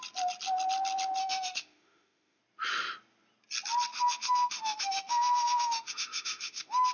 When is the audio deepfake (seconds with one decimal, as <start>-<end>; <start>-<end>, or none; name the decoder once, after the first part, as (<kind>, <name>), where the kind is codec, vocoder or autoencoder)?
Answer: 1.2-2.4 (autoencoder, DAC-VAE); 3.9-6.9